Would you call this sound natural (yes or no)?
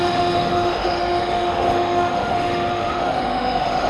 no